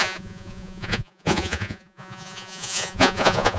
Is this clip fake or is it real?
fake